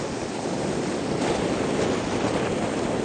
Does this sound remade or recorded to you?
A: recorded